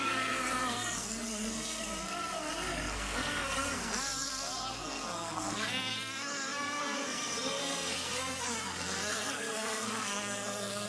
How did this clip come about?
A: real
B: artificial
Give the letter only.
B